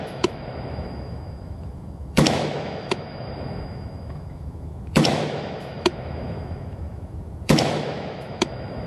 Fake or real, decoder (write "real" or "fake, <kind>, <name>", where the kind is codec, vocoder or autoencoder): fake, autoencoder, DAC-VAE